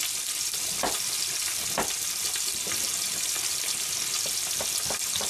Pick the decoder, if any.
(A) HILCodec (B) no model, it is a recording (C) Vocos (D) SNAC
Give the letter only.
B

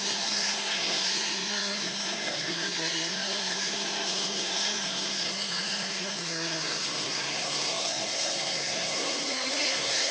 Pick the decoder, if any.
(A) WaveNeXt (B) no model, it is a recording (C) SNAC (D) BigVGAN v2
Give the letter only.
C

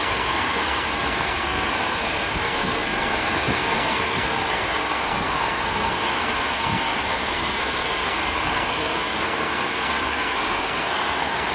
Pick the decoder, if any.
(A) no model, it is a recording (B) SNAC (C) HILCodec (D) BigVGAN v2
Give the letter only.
B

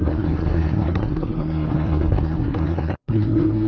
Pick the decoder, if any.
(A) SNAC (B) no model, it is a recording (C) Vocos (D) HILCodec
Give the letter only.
A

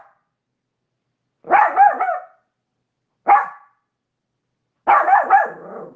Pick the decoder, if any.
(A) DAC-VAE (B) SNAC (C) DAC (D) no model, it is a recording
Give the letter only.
D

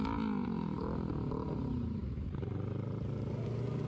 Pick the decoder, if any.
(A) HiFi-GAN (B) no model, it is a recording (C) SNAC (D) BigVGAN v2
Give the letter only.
B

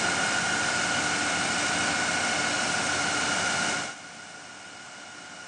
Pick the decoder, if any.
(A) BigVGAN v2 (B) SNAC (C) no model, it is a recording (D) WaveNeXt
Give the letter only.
C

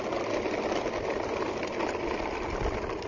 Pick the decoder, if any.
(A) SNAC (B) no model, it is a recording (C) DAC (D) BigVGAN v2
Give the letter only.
B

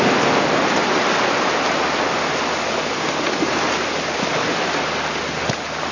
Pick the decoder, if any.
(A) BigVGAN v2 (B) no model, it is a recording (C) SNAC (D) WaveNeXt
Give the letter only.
B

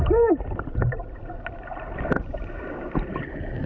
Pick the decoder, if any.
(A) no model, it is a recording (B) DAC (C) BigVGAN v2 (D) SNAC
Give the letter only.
A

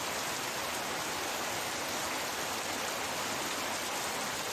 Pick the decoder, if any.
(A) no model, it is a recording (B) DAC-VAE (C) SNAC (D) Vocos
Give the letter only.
A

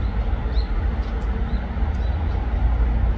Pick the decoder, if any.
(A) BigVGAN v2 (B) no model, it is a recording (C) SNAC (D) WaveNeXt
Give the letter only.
B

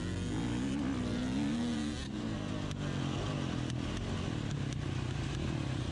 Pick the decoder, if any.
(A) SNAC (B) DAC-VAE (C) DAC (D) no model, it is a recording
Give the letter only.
D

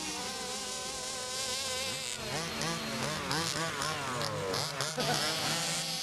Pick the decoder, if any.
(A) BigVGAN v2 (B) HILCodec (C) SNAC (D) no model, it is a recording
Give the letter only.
D